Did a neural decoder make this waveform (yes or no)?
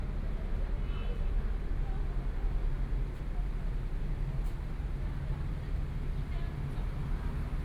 no